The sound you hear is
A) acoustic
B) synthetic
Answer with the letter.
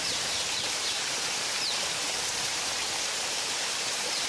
B